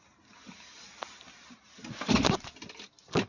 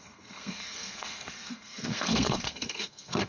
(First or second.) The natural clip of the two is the first